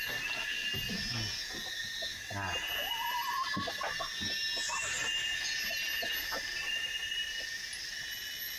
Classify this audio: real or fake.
real